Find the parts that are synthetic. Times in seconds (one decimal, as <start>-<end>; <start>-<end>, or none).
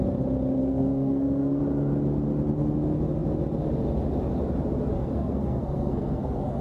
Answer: 0.6-1.6; 4.9-6.6